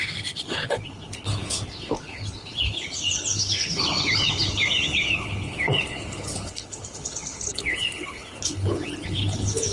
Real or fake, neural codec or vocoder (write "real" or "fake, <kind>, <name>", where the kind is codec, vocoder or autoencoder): fake, codec, HILCodec